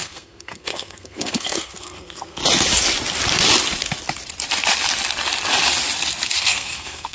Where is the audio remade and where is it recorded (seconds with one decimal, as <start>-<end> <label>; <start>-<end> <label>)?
0.0-2.4 remade; 2.4-6.4 recorded; 6.4-7.1 remade